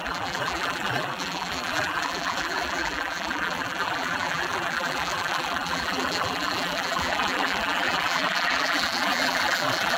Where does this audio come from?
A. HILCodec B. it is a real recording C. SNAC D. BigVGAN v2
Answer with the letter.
D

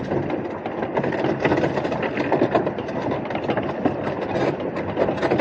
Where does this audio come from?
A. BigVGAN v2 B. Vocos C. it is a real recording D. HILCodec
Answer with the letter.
C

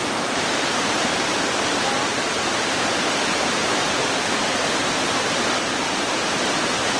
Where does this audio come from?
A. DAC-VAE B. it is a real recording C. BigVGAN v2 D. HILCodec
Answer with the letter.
C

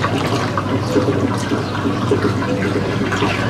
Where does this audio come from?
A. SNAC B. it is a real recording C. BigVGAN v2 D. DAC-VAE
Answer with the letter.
B